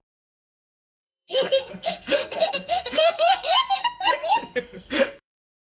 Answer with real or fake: fake